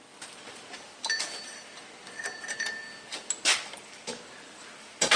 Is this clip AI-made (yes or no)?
no